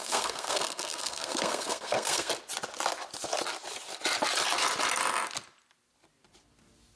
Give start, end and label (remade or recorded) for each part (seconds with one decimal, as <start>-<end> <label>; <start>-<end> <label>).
0.0-2.3 remade; 2.3-7.0 recorded